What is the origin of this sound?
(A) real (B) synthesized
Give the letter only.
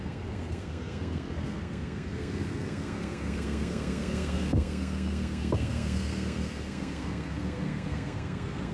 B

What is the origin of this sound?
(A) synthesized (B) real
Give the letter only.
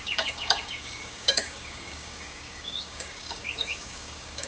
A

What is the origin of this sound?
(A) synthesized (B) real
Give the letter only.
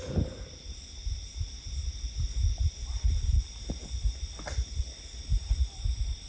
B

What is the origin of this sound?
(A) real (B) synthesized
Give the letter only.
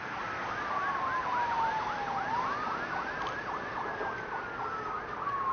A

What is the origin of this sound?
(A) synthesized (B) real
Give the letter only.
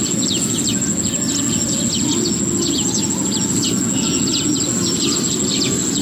B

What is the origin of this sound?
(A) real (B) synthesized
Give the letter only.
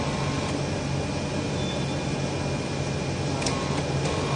A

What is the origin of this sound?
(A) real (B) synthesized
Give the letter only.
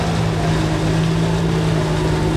A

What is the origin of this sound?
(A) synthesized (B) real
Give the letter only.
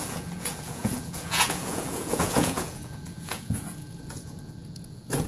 A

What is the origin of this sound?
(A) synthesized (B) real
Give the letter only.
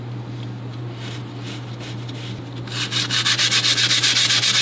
B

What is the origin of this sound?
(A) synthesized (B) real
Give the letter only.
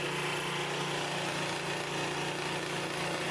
B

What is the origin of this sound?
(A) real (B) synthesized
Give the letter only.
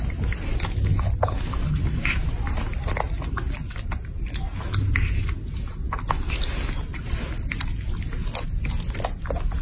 A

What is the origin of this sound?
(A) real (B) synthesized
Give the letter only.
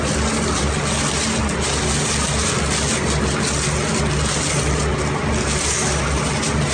A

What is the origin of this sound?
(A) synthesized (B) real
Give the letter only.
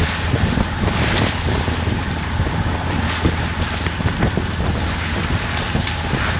B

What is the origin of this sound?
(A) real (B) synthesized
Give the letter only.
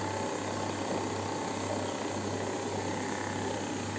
A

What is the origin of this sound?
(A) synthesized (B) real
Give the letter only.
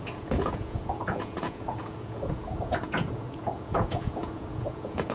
A